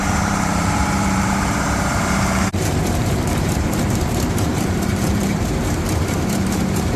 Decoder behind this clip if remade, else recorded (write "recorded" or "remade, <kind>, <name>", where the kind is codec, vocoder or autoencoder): remade, vocoder, BigVGAN v2